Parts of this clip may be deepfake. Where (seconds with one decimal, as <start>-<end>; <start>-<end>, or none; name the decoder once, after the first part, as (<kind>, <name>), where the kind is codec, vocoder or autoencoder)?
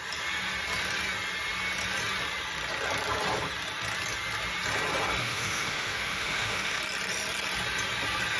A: 5.2-6.8 (autoencoder, DAC-VAE)